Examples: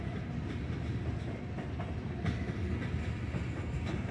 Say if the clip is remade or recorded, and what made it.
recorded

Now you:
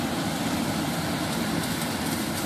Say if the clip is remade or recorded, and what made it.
recorded